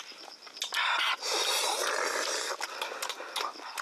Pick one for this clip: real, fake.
real